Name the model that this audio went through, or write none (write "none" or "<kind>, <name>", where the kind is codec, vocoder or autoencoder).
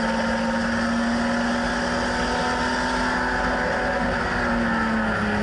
none